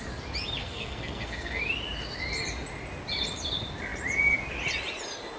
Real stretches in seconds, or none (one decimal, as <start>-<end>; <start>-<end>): 0.0-0.6; 1.6-5.4